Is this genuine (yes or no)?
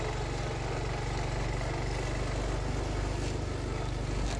yes